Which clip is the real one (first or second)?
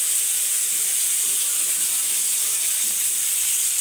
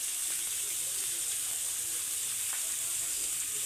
first